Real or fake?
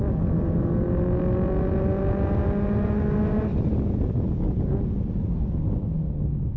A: real